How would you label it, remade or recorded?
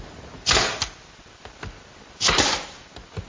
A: recorded